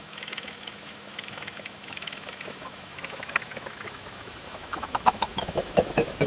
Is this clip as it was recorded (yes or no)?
no